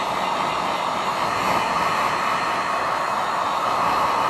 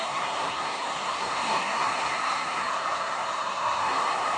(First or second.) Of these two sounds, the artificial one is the second